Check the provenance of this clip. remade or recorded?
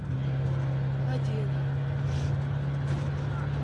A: recorded